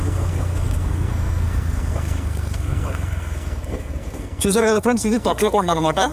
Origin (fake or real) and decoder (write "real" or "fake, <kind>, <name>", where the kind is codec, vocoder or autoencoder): fake, codec, SNAC